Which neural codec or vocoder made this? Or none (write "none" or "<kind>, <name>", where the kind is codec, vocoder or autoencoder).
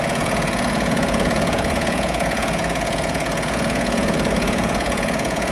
vocoder, Vocos